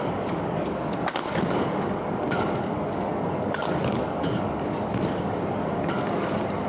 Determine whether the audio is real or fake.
fake